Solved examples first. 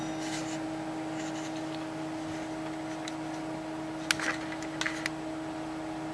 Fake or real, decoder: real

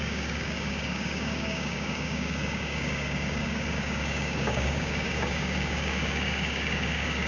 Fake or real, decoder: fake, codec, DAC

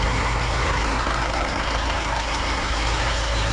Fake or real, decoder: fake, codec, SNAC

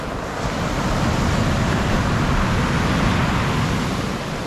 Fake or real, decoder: real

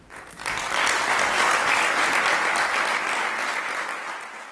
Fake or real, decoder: real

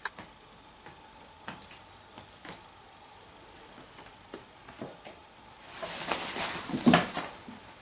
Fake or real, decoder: real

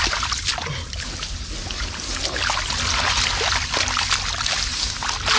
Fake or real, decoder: real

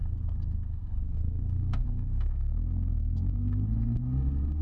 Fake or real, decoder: fake, codec, SNAC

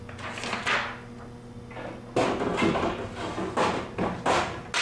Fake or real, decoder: real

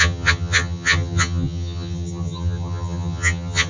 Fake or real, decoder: fake, vocoder, HiFi-GAN